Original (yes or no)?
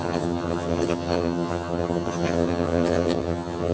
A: no